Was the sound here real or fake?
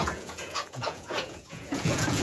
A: fake